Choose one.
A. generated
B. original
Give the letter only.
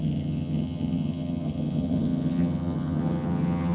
A